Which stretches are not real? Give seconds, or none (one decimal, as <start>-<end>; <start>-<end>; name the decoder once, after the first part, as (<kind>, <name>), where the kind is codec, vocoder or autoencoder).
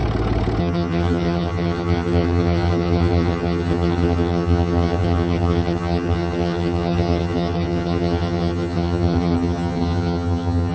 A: 0.6-10.7 (vocoder, HiFi-GAN)